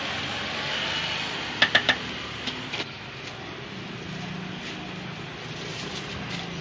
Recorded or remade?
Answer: recorded